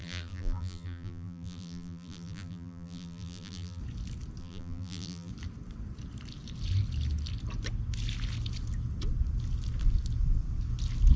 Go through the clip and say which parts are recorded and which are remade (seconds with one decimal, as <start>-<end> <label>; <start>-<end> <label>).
0.0-3.8 remade; 3.8-4.4 recorded; 4.4-5.3 remade; 5.3-11.2 recorded

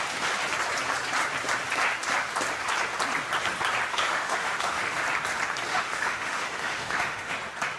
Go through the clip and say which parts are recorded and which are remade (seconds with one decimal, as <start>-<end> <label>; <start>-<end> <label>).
0.0-3.9 recorded; 3.9-5.0 remade; 5.0-5.7 recorded; 5.7-7.3 remade; 7.3-7.8 recorded

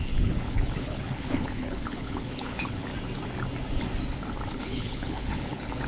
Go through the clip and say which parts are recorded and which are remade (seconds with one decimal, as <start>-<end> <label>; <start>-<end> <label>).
0.0-2.9 remade; 2.9-4.6 recorded; 4.6-5.9 remade

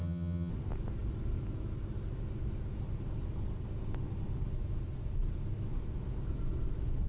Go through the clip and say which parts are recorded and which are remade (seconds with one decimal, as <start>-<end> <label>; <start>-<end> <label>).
0.0-0.5 remade; 0.5-7.1 recorded

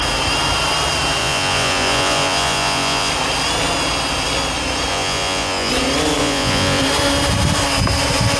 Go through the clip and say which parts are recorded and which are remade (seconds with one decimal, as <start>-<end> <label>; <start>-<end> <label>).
0.0-1.2 recorded; 1.2-3.1 remade; 3.1-4.9 recorded; 4.9-5.7 remade; 5.7-6.2 recorded; 6.2-6.8 remade; 6.8-8.4 recorded

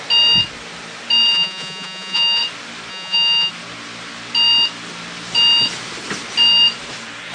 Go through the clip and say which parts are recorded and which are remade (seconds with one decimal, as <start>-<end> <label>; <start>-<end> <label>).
0.0-1.3 recorded; 1.3-2.4 remade; 2.4-2.9 recorded; 2.9-3.5 remade; 3.5-7.3 recorded

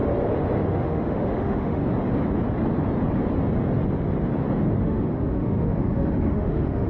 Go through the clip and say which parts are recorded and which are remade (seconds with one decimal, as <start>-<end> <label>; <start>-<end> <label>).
0.0-0.7 recorded; 0.7-1.8 remade; 1.8-4.8 recorded; 4.8-6.9 remade

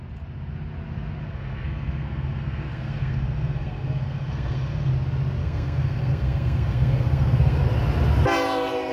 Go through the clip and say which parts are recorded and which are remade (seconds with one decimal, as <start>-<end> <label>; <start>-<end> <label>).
0.0-1.2 recorded; 1.2-4.9 remade; 4.9-5.4 recorded; 5.4-7.6 remade; 7.6-8.9 recorded